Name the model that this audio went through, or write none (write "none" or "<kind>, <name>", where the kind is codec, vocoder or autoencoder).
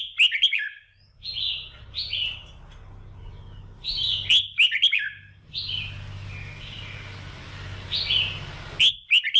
none